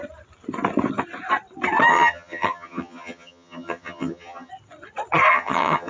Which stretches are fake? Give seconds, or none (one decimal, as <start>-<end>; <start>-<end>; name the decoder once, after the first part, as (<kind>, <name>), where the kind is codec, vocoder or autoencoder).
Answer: 1.9-4.5 (vocoder, HiFi-GAN); 5.3-5.9